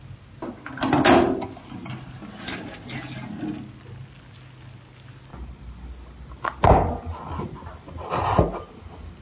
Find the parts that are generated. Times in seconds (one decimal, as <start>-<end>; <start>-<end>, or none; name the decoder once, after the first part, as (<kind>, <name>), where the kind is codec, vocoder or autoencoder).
none

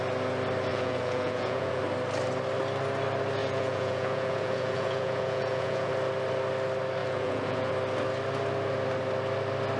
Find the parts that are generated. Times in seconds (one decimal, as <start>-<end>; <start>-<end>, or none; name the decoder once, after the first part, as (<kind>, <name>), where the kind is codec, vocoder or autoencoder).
0.7-1.8 (vocoder, Vocos); 3.4-5.9; 7.0-7.7

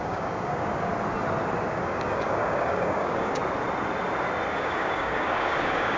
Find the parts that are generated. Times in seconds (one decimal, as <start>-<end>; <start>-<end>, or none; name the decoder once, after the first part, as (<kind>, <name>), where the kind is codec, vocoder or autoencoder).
0.0-0.9 (codec, DAC); 1.7-3.4; 4.5-6.0

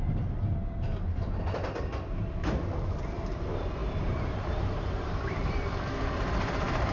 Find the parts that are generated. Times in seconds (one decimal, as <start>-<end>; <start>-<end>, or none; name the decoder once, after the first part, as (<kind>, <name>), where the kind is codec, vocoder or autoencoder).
3.8-5.4 (vocoder, BigVGAN v2)